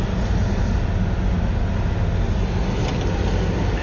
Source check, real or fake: real